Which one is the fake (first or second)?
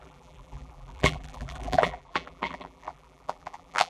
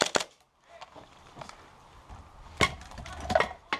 first